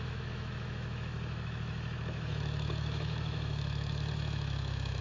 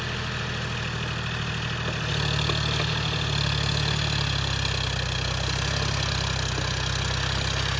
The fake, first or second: first